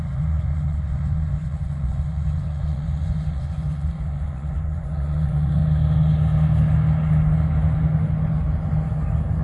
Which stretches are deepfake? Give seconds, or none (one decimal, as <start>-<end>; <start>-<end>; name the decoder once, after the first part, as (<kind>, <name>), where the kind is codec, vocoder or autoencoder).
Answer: 0.0-5.6 (vocoder, Vocos)